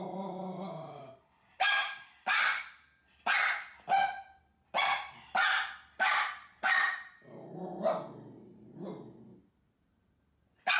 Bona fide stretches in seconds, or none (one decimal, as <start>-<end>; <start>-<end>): 0.0-10.8